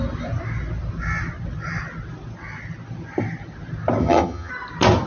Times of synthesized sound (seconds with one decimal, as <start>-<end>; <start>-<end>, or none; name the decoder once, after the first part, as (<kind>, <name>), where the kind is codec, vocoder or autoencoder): 4.0-4.5 (vocoder, HiFi-GAN)